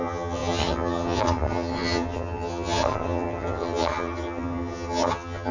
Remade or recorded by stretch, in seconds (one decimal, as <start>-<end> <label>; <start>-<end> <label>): 0.0-5.5 remade